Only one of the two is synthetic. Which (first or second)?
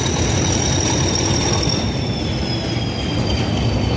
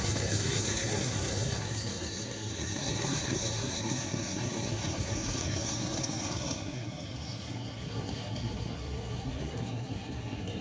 second